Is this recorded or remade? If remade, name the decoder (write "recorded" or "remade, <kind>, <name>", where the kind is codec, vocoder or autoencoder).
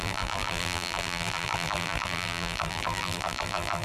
remade, vocoder, BigVGAN v2